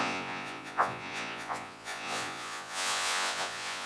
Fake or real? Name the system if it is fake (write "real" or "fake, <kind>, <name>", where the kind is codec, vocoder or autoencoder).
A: fake, vocoder, Vocos